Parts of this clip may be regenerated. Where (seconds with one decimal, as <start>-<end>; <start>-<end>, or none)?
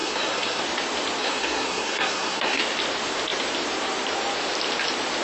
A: 0.0-0.6; 1.2-2.6